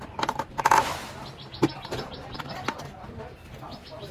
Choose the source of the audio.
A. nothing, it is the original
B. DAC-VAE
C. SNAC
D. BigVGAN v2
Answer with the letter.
A